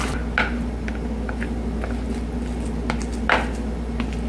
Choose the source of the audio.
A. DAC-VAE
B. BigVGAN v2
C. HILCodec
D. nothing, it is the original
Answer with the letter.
D